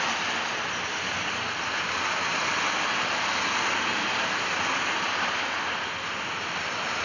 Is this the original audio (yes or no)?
yes